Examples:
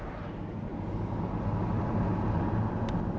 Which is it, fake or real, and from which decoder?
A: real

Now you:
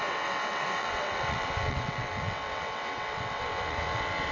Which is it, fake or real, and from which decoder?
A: fake, vocoder, WaveNeXt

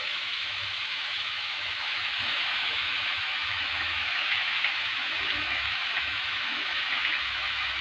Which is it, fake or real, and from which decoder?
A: fake, autoencoder, DAC-VAE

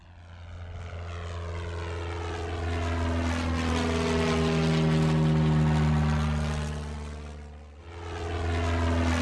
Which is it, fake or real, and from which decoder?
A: real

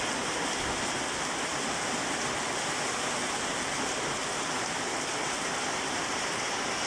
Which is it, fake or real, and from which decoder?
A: real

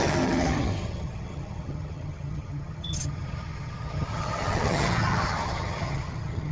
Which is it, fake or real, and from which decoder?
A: fake, vocoder, HiFi-GAN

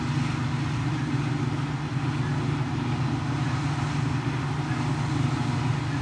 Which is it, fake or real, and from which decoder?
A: real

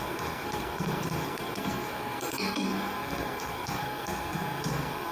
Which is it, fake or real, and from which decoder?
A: fake, codec, SNAC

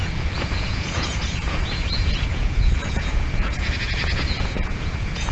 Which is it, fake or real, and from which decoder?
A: fake, vocoder, Vocos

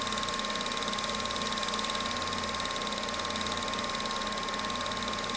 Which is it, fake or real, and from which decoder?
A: real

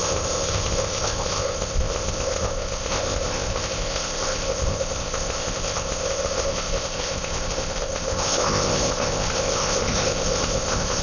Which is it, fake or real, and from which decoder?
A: fake, codec, ZipCodec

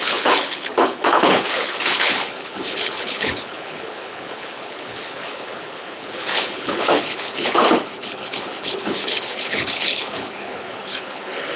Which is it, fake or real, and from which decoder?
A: fake, codec, HILCodec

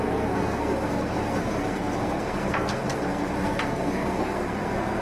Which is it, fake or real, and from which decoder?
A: fake, codec, SNAC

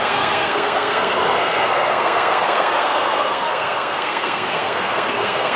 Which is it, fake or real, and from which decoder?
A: fake, codec, SNAC